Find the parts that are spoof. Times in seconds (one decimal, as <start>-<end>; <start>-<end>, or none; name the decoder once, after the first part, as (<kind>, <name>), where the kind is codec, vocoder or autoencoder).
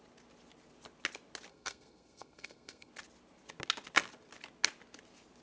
1.5-2.9 (codec, SNAC)